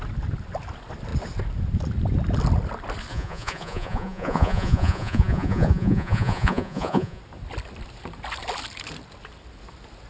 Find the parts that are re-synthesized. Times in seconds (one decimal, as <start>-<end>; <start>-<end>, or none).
3.1-7.2